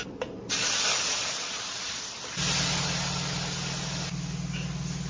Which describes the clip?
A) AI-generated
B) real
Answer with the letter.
B